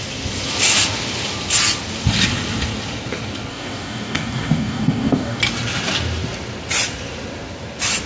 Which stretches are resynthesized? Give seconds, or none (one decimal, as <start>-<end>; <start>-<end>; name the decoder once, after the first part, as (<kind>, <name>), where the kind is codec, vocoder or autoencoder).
3.5-5.4 (codec, DAC)